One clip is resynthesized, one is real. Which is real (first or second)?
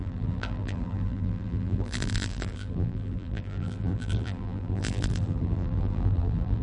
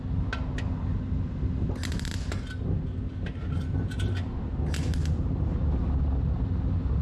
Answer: second